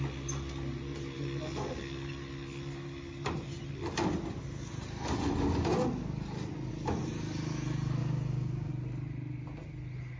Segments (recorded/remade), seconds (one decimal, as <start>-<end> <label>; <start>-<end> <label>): 0.0-8.0 recorded; 8.0-8.7 remade; 8.7-10.2 recorded